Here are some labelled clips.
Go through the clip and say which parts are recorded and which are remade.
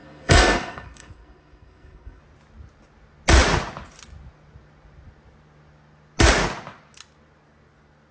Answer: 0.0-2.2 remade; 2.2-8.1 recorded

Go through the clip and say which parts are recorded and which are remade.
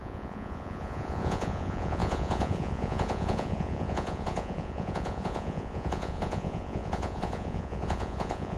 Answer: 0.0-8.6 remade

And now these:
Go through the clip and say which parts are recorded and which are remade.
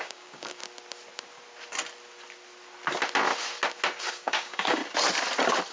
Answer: 0.0-0.6 remade; 0.6-4.0 recorded; 4.0-4.8 remade; 4.8-5.7 recorded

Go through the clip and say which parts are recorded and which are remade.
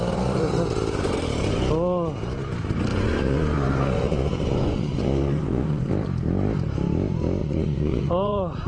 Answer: 0.0-2.9 recorded; 2.9-5.9 remade; 5.9-7.4 recorded; 7.4-8.7 remade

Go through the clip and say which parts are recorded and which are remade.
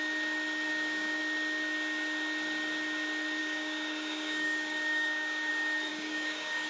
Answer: 0.0-0.7 recorded; 0.7-1.2 remade; 1.2-3.4 recorded; 3.4-5.5 remade; 5.5-5.9 recorded; 5.9-6.7 remade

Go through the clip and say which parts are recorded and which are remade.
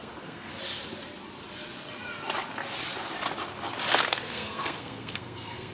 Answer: 0.0-0.5 remade; 0.5-3.9 recorded; 3.9-5.7 remade